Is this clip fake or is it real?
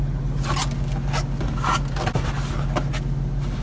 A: real